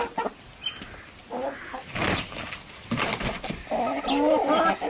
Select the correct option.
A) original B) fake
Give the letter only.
A